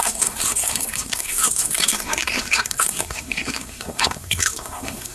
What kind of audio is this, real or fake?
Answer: fake